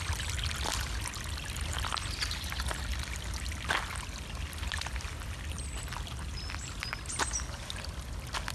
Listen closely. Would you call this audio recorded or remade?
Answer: recorded